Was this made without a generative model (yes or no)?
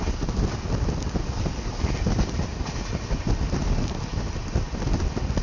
yes